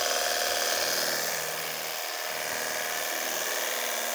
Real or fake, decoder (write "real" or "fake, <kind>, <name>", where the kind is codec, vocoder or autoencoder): real